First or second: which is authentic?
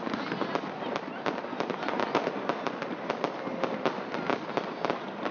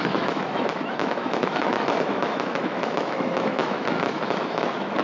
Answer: first